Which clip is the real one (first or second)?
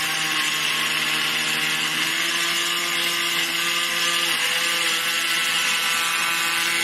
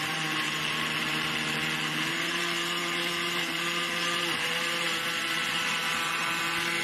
first